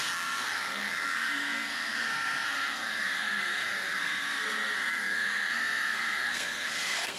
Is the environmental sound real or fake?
fake